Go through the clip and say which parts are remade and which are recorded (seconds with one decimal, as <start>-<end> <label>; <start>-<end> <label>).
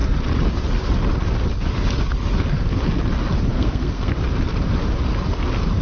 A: 0.0-3.5 recorded; 3.5-4.1 remade; 4.1-5.8 recorded